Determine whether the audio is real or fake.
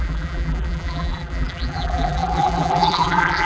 fake